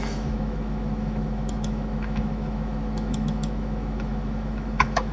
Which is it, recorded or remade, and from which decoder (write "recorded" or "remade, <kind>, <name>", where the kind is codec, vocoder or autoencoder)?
remade, autoencoder, DAC-VAE